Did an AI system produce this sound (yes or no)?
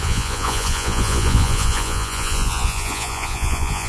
yes